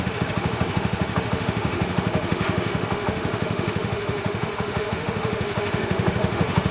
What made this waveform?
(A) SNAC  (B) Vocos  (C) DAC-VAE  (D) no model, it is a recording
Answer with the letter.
C